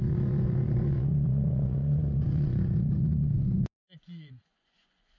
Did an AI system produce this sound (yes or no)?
yes